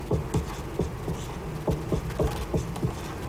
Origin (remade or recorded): recorded